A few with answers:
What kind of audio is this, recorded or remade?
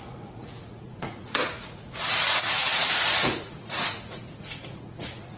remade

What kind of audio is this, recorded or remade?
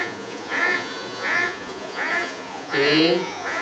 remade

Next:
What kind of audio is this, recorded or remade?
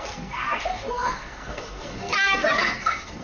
remade